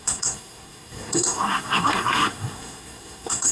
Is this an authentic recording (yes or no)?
no